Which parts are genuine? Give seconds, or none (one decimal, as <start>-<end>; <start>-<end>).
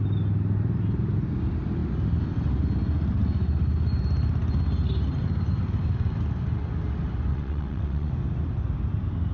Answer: 0.0-7.3; 8.1-9.3